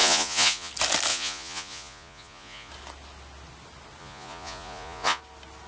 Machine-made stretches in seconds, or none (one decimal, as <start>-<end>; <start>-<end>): 0.0-0.7; 1.1-2.7; 4.0-5.2